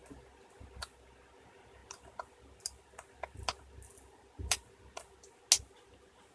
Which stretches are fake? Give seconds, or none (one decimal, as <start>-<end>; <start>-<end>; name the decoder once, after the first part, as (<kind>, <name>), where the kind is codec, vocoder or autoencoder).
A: none